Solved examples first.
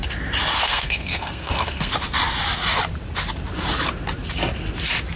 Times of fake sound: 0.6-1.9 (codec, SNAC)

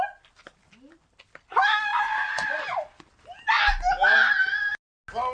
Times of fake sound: none

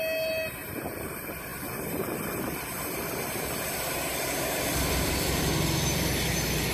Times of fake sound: 1.5-5.4 (vocoder, BigVGAN v2)

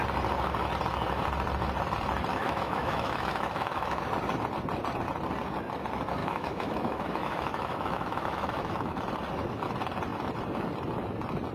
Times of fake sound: 2.3-4.0 (autoencoder, DAC-VAE); 6.2-9.0